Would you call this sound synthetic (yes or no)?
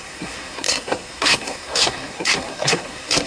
yes